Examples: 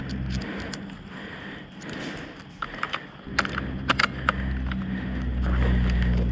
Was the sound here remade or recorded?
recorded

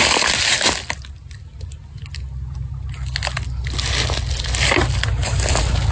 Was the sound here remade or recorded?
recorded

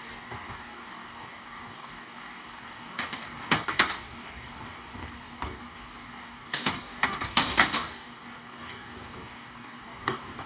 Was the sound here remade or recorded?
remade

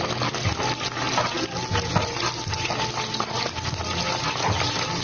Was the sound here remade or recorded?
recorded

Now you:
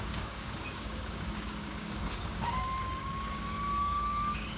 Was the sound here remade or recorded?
remade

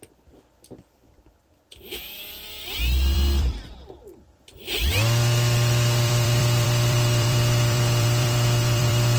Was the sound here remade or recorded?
remade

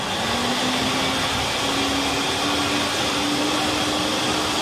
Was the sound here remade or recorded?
recorded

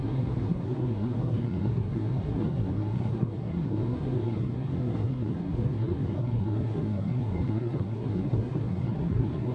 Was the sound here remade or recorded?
remade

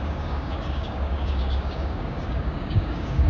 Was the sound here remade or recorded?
remade